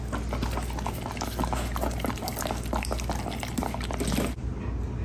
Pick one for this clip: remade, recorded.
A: recorded